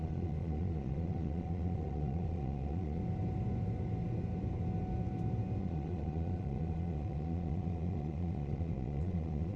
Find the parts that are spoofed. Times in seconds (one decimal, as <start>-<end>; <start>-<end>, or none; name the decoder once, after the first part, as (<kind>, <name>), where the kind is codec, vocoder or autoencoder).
0.0-3.0 (vocoder, Vocos); 5.6-9.6